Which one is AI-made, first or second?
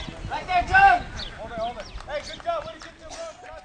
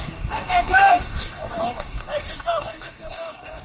second